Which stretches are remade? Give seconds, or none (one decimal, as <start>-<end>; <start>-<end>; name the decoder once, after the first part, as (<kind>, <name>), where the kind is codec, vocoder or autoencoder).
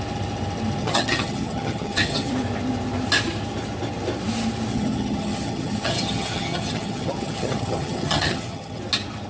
0.8-2.3 (vocoder, HiFi-GAN); 4.7-8.8